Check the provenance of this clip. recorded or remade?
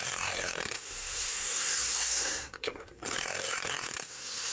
remade